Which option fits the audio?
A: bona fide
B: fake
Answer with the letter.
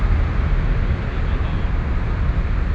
A